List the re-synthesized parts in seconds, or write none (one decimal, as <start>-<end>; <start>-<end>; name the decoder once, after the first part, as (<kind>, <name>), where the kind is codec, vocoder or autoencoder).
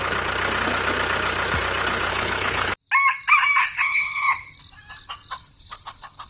2.1-2.7 (codec, HILCodec); 3.6-4.5; 5.4-6.3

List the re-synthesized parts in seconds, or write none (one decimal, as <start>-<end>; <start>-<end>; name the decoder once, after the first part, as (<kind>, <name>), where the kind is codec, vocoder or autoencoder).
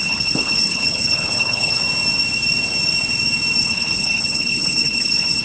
0.0-1.8 (codec, HILCodec); 3.6-5.4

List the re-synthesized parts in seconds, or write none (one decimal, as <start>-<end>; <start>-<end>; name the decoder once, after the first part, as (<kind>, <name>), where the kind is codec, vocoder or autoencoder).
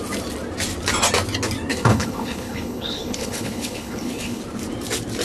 1.7-4.4 (codec, HILCodec)